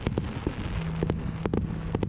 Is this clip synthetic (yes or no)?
no